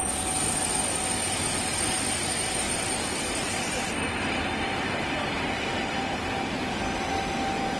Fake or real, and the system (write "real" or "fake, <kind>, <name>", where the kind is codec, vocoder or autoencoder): real